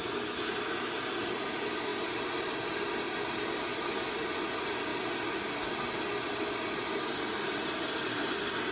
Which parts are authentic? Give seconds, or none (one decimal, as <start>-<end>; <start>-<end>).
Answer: 0.0-8.7